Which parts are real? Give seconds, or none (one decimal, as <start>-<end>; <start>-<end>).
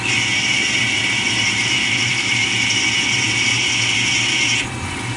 0.0-5.2